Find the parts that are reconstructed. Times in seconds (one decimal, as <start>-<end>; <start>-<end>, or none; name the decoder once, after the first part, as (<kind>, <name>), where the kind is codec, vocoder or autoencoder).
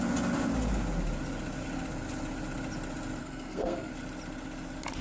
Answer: 3.2-3.9 (codec, SNAC)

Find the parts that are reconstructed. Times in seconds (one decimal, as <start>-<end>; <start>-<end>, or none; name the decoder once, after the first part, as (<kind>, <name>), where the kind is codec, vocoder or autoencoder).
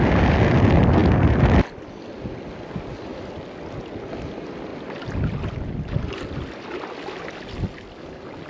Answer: none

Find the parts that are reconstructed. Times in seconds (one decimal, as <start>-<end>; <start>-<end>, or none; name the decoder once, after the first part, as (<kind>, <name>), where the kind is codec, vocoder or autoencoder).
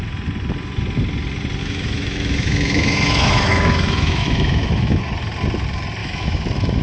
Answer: 1.6-5.0 (autoencoder, DAC-VAE); 6.0-6.8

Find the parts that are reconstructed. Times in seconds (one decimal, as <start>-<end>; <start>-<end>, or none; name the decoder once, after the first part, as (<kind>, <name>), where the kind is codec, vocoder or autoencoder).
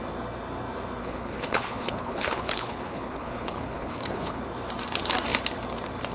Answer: 1.0-4.4 (codec, HILCodec)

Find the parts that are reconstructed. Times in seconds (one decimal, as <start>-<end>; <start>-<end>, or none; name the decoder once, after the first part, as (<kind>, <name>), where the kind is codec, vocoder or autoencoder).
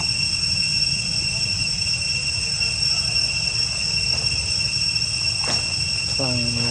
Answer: 0.7-4.7 (vocoder, BigVGAN v2)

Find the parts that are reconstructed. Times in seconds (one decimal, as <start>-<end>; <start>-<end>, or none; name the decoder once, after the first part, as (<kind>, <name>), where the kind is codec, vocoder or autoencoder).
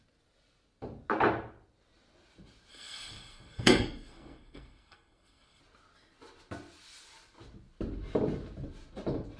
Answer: 2.7-5.6 (codec, SNAC)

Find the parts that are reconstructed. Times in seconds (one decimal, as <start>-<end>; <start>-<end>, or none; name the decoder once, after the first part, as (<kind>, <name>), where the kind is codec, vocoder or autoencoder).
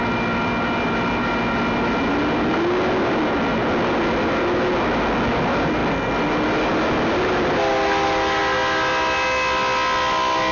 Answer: none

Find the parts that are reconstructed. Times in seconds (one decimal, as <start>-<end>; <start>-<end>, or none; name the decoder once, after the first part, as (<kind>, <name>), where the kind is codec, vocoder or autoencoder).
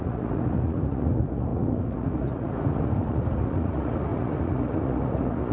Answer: 0.0-5.5 (vocoder, Vocos)